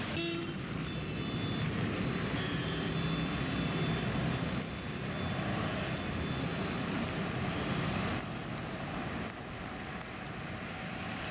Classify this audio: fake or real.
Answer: real